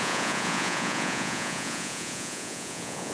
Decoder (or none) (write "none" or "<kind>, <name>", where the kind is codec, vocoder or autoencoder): vocoder, Vocos